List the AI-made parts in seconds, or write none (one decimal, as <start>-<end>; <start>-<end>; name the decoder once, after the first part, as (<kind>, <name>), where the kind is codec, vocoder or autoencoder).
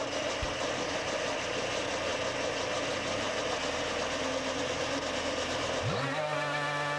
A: none